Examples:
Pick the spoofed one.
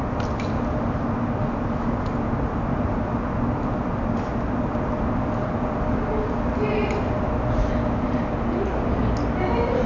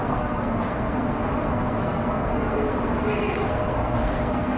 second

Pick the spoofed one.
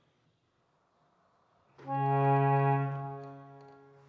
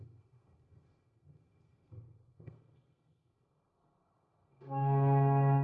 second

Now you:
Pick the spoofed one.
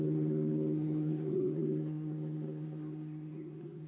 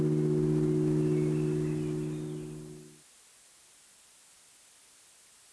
first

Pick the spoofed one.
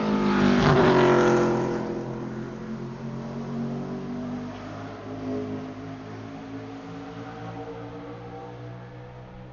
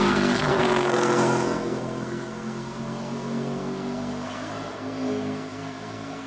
second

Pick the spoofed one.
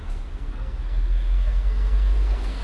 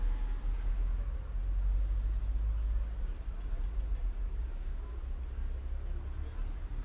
first